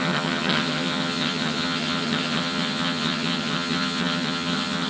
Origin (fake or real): fake